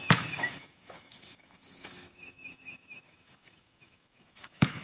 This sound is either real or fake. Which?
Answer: fake